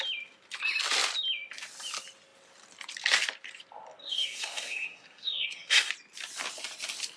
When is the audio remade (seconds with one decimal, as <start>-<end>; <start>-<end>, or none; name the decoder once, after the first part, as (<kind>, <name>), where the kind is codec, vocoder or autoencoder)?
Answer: 4.0-5.9 (codec, SNAC)